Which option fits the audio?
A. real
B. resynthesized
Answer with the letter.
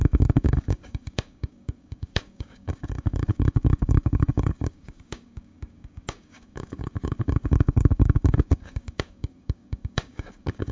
B